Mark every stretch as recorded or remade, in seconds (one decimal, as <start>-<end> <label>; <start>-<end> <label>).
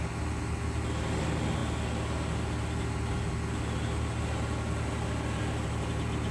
0.0-6.3 recorded